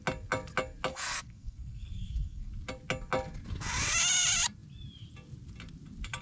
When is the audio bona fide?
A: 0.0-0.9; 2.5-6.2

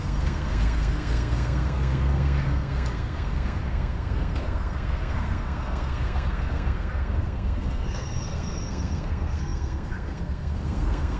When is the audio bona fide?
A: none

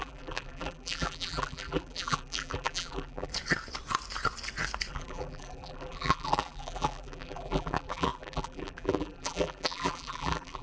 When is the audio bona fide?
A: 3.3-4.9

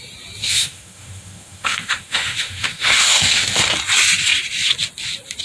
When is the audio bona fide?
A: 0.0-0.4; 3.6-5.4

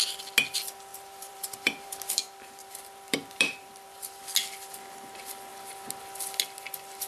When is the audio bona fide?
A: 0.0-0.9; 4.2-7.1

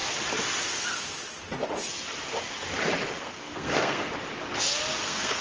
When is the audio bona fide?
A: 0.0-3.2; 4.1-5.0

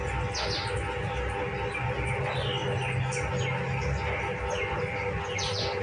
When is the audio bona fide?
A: 0.0-5.8